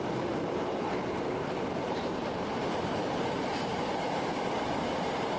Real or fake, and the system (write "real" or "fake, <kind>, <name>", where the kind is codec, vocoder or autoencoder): fake, vocoder, BigVGAN v2